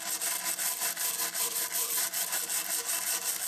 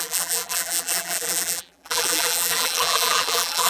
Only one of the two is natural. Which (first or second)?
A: first